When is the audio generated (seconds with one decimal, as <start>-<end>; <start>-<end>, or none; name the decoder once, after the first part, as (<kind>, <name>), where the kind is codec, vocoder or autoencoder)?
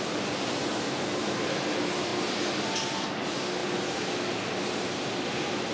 0.0-0.6 (vocoder, BigVGAN v2); 1.1-2.1; 2.9-3.6; 5.3-5.7